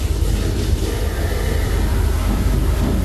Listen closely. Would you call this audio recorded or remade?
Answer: remade